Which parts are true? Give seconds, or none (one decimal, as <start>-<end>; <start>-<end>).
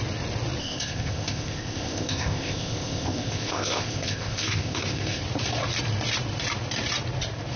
0.0-0.6; 5.2-7.6